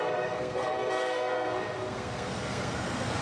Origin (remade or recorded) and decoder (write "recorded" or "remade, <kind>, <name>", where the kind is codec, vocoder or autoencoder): remade, codec, SNAC